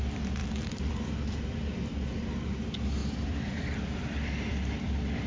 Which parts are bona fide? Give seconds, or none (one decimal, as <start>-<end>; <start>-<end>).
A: 0.0-0.4; 1.1-3.0